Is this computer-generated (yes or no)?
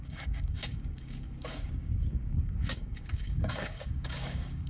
yes